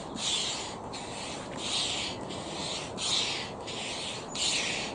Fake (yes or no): no